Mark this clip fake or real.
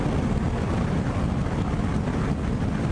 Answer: real